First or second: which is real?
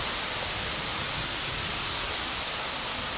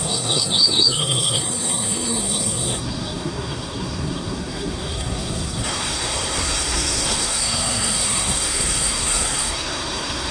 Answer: first